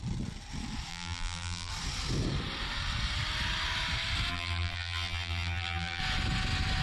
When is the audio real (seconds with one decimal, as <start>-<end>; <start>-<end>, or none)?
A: 0.0-0.9; 1.7-4.3; 6.0-6.8